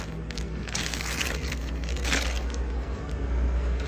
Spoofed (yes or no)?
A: yes